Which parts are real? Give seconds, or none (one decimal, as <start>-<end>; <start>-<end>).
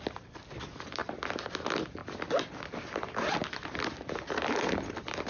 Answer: 0.0-5.3